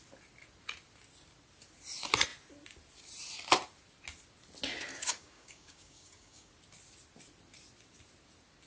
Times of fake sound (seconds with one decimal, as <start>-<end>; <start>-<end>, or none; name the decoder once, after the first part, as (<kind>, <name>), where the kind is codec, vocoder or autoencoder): 4.9-6.5 (codec, DAC)